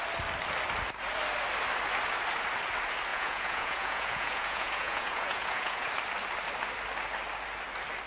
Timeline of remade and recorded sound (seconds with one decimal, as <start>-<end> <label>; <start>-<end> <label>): 0.0-3.1 recorded; 3.1-5.9 remade; 5.9-8.1 recorded